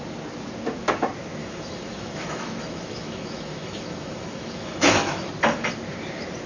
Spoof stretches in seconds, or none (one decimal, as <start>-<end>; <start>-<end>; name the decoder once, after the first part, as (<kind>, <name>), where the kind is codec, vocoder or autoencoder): 1.4-5.3 (autoencoder, DAC-VAE)